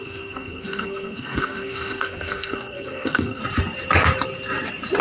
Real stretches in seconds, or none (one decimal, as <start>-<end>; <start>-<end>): 3.4-5.0